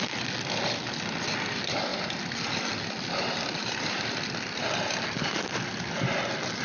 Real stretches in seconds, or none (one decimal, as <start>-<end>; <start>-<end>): 0.0-6.6